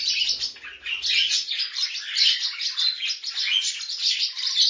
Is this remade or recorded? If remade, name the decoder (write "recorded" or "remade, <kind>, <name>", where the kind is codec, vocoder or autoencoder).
recorded